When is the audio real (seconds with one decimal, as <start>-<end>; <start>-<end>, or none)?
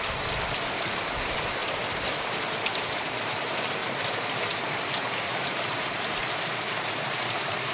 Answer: 3.8-4.7